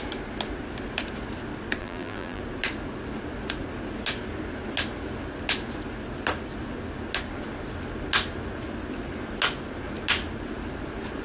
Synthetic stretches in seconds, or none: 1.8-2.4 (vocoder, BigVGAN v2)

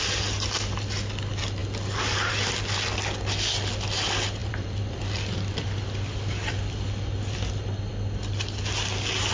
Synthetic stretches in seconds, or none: 4.4-7.5 (vocoder, BigVGAN v2)